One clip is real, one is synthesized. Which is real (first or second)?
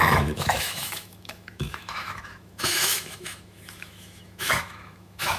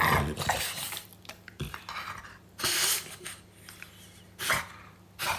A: second